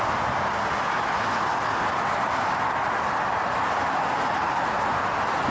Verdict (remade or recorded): recorded